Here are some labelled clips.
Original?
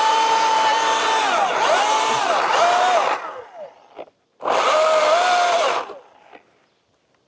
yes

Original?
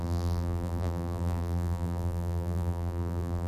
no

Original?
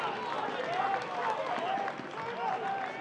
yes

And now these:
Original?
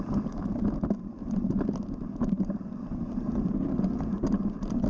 no